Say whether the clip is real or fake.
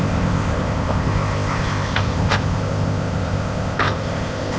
fake